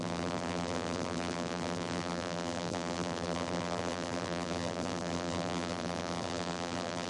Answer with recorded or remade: remade